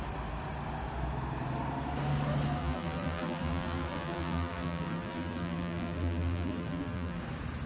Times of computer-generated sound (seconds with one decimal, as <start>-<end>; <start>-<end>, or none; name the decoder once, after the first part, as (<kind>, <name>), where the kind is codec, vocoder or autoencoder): 2.6-7.2 (vocoder, BigVGAN v2)